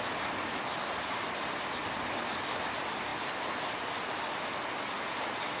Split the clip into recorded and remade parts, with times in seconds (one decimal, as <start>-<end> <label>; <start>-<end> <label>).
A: 0.0-5.6 recorded